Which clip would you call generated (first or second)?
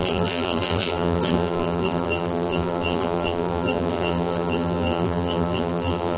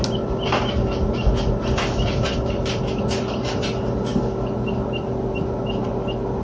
first